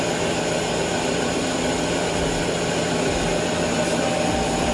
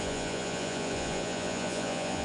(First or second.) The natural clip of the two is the first